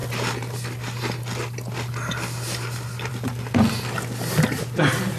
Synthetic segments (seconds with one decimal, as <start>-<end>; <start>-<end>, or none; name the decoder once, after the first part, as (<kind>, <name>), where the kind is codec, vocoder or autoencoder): none